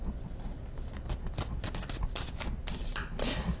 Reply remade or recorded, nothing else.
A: recorded